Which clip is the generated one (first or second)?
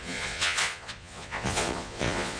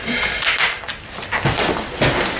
first